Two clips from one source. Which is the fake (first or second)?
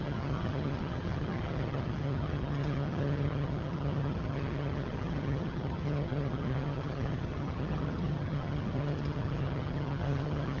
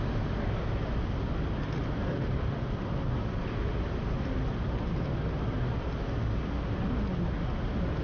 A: first